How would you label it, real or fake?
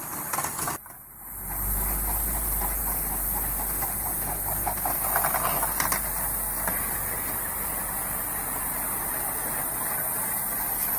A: real